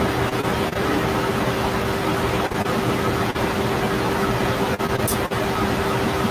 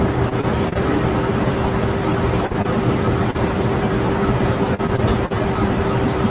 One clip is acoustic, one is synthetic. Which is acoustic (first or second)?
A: first